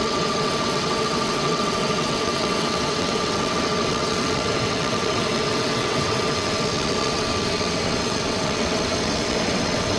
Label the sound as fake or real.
fake